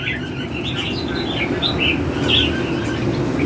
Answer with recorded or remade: recorded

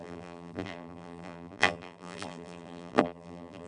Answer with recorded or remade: remade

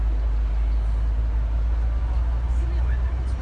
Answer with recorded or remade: recorded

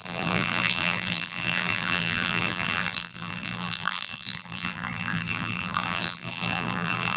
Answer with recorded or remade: remade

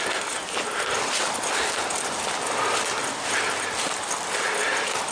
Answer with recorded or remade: recorded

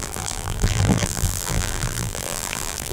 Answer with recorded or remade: remade